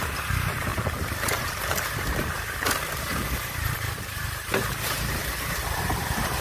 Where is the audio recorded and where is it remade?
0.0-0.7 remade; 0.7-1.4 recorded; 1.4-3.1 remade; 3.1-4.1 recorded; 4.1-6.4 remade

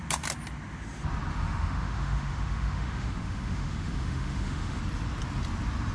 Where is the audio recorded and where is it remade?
0.0-1.3 recorded; 1.3-4.8 remade; 4.8-5.9 recorded

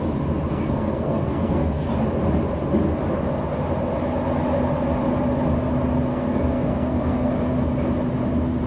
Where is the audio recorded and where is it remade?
0.0-0.5 recorded; 0.5-1.9 remade; 1.9-6.1 recorded; 6.1-7.3 remade; 7.3-8.7 recorded

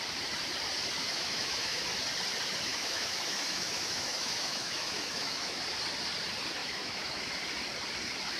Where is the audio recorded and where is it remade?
0.0-1.0 recorded; 1.0-1.8 remade; 1.8-2.7 recorded; 2.7-5.6 remade; 5.6-6.6 recorded; 6.6-7.3 remade; 7.3-8.4 recorded